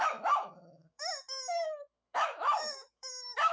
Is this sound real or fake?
fake